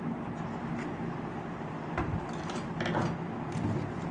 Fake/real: real